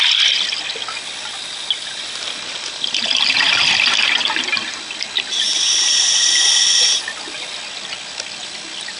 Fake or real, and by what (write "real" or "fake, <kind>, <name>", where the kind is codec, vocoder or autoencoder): real